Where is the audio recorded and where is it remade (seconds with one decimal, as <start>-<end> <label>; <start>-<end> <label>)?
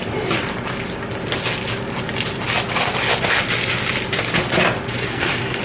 0.0-5.0 recorded; 5.0-5.6 remade